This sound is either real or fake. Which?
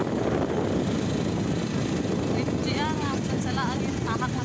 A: real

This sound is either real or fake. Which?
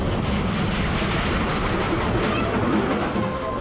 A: real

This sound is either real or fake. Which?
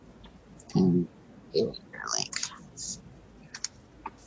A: real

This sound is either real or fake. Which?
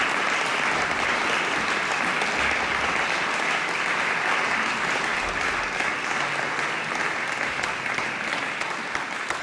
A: real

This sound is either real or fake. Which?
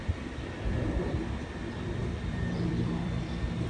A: fake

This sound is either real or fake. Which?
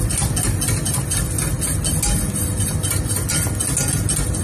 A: real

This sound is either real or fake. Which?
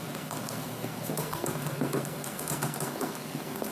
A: fake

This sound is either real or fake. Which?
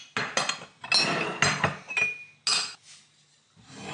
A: real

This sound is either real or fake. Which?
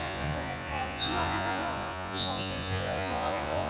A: fake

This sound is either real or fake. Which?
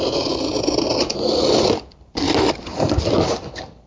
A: real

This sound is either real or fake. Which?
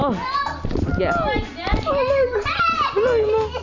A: real